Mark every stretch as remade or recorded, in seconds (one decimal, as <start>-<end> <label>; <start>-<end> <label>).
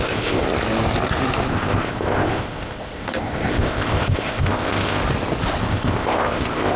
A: 0.0-0.4 remade; 0.4-1.5 recorded; 1.5-5.0 remade; 5.0-5.6 recorded; 5.6-6.8 remade